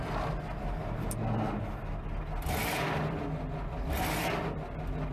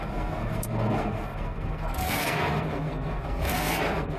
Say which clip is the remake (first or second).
second